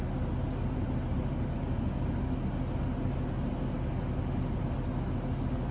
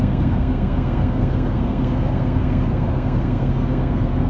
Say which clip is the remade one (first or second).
second